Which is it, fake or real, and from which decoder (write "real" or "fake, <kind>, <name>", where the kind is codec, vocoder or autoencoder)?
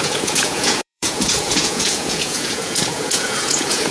fake, vocoder, Vocos